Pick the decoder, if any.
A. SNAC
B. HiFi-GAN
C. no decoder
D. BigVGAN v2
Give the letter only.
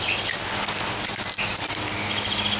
C